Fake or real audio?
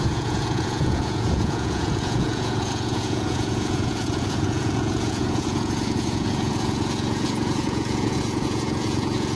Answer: fake